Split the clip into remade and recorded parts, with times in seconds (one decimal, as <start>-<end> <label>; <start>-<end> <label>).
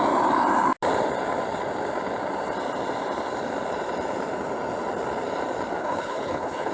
0.0-5.8 recorded; 5.8-6.7 remade